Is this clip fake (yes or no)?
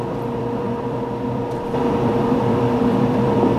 yes